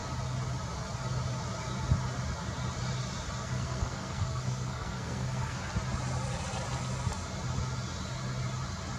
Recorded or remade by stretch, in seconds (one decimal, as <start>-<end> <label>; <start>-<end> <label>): 0.0-3.4 recorded; 3.4-5.6 remade; 5.6-9.0 recorded